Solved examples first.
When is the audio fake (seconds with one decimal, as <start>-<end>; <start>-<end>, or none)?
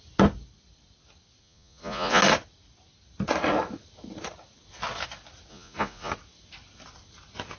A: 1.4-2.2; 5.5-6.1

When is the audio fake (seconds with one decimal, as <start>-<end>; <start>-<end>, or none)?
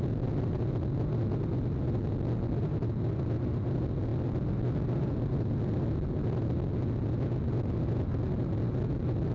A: none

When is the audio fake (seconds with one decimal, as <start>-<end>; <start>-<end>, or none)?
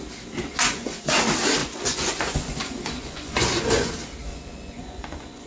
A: 0.5-1.1; 1.6-3.9; 4.3-5.5